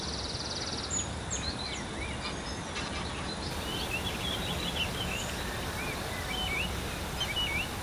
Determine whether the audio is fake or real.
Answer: real